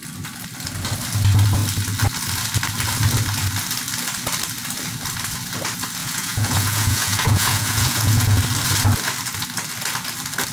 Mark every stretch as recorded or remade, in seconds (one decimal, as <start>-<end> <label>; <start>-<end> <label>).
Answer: 0.0-6.0 recorded; 6.0-8.4 remade; 8.4-10.5 recorded